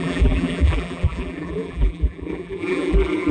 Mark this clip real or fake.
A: fake